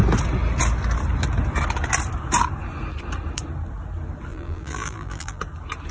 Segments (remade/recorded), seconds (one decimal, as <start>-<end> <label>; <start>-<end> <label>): 0.0-4.3 recorded; 4.3-5.4 remade; 5.4-5.9 recorded